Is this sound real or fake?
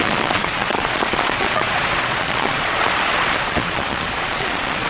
fake